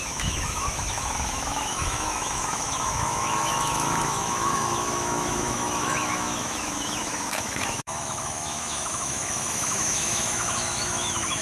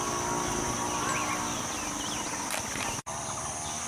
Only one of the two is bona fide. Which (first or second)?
second